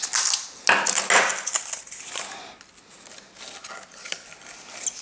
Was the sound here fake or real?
real